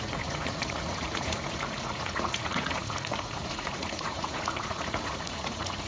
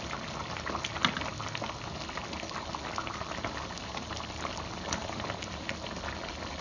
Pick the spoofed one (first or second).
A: first